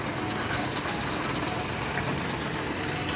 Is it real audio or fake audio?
real